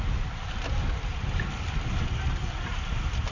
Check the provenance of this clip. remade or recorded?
recorded